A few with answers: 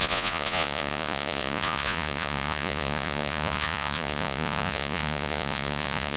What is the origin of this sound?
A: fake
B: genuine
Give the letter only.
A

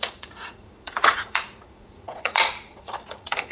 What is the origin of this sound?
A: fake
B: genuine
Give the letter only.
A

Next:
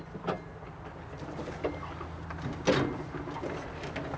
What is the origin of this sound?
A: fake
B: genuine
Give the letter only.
B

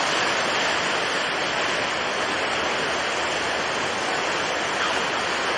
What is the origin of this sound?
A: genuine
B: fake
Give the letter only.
A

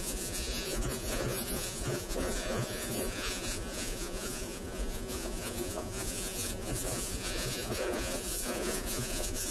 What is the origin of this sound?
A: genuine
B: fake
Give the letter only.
B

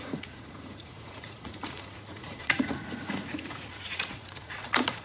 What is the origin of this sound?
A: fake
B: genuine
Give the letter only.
A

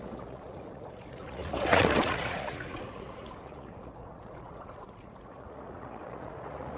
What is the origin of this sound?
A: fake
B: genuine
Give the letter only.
A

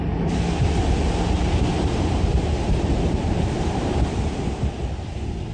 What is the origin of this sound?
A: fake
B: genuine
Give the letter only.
B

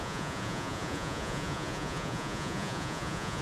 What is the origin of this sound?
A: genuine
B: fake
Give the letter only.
B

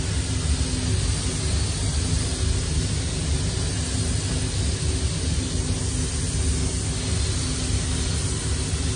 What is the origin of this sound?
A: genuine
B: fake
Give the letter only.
A